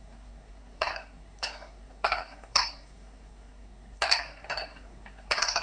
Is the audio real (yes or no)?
no